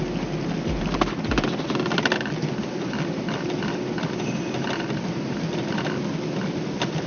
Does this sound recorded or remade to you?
recorded